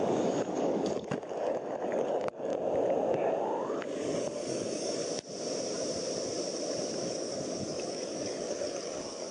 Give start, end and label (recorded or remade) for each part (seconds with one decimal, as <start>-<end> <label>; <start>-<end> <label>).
0.0-2.5 remade; 2.5-3.6 recorded; 3.6-5.0 remade; 5.0-7.0 recorded; 7.0-9.3 remade